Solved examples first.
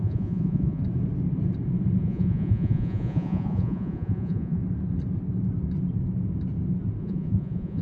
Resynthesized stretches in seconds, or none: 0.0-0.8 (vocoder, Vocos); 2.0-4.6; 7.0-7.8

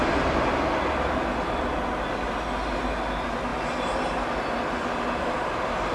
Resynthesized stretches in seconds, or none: none

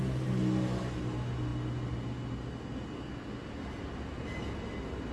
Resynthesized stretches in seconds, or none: none

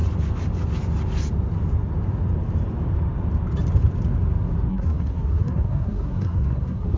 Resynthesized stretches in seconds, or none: 4.7-7.0 (codec, SNAC)

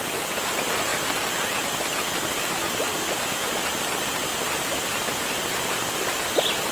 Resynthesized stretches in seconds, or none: 4.3-5.0 (vocoder, BigVGAN v2)

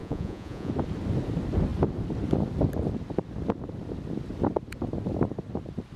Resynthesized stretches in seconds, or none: 0.0-0.7 (vocoder, Vocos)

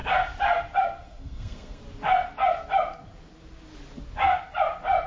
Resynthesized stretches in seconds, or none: 0.8-1.8 (codec, SNAC)